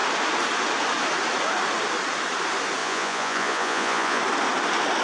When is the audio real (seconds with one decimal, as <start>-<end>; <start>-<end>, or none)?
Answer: 0.0-2.8; 4.2-5.0